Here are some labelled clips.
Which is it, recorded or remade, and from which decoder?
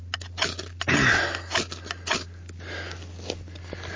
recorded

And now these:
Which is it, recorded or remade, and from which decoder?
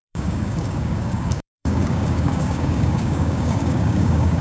remade, codec, DAC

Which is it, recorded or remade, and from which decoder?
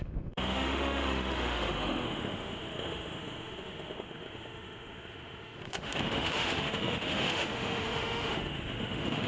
remade, autoencoder, DAC-VAE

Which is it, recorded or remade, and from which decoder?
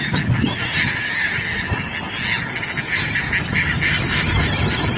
recorded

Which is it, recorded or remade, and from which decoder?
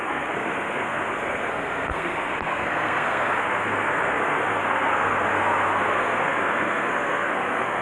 remade, codec, SNAC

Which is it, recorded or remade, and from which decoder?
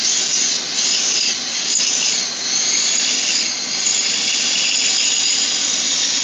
recorded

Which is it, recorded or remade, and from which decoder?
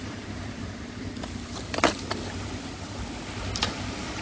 remade, vocoder, BigVGAN v2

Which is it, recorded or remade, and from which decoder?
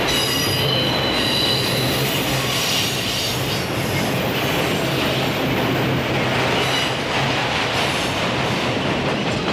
recorded